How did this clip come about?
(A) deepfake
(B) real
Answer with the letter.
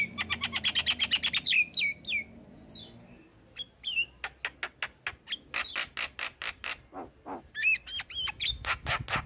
B